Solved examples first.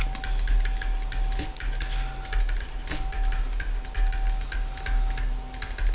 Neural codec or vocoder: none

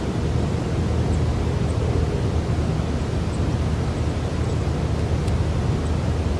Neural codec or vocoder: none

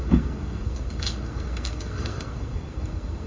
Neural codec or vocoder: codec, SNAC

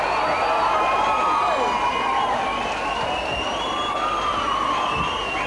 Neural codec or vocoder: none